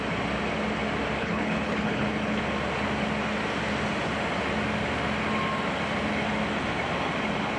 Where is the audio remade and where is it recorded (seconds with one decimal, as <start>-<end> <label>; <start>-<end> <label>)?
0.0-1.2 recorded; 1.2-2.4 remade; 2.4-7.6 recorded